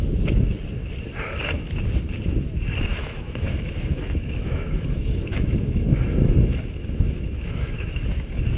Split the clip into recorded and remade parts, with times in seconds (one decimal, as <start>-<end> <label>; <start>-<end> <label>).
0.0-2.9 recorded; 2.9-8.0 remade; 8.0-8.6 recorded